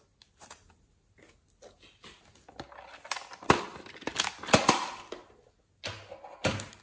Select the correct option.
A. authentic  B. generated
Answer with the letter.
A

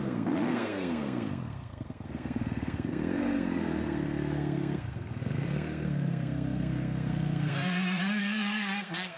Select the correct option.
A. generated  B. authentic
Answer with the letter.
A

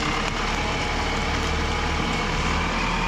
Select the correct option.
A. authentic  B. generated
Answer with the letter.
A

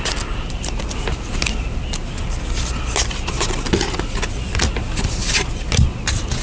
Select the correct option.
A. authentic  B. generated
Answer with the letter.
A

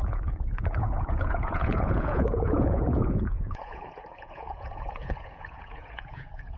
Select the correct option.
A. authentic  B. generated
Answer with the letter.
B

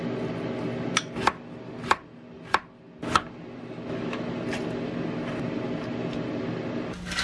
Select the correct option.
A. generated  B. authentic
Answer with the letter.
B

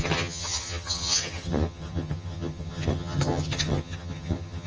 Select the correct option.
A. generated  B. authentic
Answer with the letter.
A